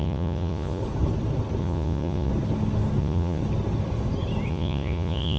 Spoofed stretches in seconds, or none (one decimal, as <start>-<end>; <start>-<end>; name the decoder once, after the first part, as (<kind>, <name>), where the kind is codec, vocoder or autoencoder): 0.0-0.8 (vocoder, Vocos); 1.6-2.3; 3.0-3.4; 4.5-5.4